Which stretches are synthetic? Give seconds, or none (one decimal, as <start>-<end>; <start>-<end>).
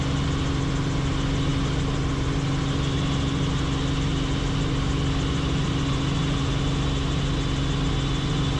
none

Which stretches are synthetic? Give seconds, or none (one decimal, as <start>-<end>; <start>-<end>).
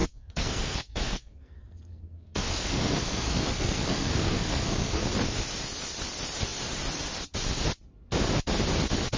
0.0-5.0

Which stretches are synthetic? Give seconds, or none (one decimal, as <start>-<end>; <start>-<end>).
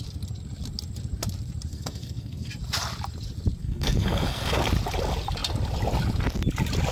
1.7-2.5; 3.6-4.6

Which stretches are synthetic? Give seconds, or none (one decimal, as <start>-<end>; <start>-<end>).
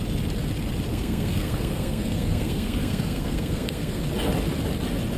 0.9-4.0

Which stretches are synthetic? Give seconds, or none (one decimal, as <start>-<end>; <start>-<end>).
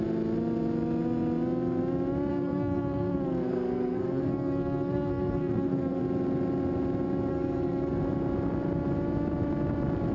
2.3-6.0; 7.3-8.0